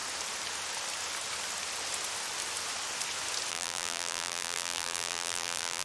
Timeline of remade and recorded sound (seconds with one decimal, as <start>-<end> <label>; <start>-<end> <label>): 0.0-3.5 recorded; 3.5-5.8 remade